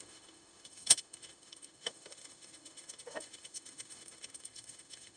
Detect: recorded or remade remade